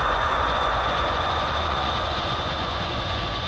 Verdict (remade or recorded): remade